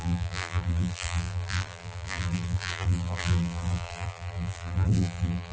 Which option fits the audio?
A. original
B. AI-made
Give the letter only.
B